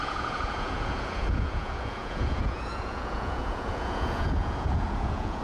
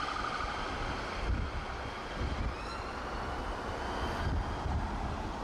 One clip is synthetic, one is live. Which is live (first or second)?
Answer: second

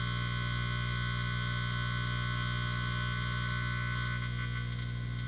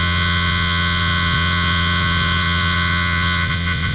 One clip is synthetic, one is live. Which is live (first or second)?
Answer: first